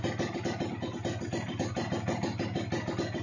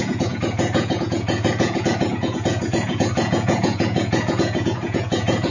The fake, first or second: second